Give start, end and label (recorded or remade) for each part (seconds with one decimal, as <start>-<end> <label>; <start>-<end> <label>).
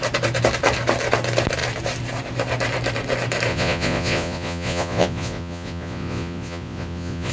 0.0-3.5 recorded; 3.5-7.3 remade